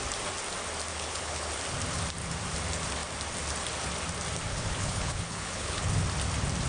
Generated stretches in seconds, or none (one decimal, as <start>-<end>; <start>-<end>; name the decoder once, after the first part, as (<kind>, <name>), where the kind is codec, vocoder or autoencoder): 0.9-1.5 (codec, HILCodec); 4.5-5.8